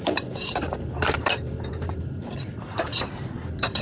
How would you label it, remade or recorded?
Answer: remade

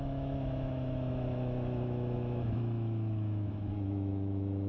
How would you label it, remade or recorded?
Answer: remade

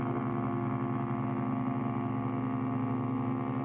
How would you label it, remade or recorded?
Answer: recorded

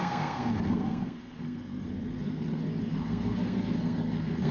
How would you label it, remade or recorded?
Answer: remade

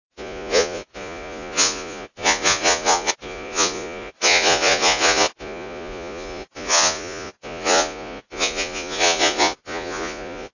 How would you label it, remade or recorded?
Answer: remade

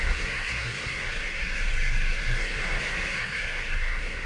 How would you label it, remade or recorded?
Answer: remade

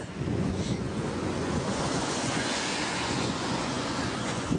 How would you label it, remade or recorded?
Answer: remade